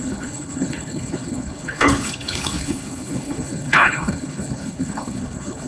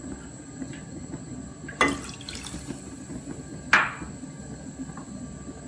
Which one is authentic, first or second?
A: second